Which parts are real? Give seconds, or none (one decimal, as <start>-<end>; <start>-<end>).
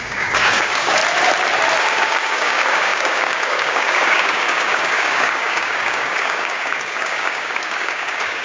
1.0-1.8